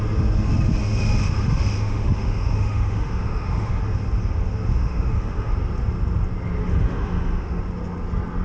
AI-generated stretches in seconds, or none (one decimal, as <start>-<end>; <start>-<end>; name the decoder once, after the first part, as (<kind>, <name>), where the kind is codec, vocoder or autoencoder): 0.8-3.8 (autoencoder, DAC-VAE); 4.7-5.5; 6.7-7.6